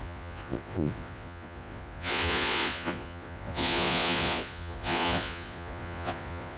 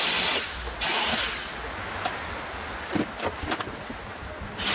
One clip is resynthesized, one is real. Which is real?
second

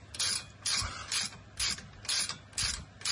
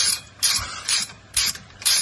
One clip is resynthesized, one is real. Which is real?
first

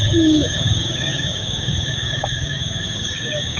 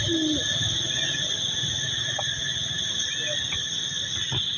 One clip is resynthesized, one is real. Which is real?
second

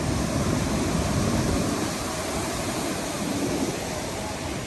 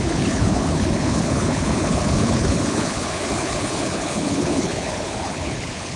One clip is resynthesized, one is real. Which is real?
first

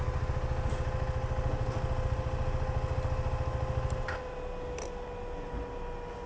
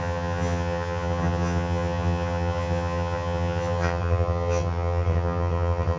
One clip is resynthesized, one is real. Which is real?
first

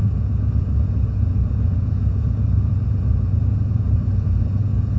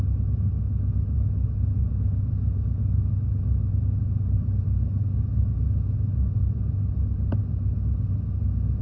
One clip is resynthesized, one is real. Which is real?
second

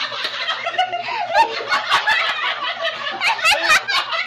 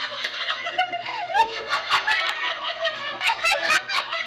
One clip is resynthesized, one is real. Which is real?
first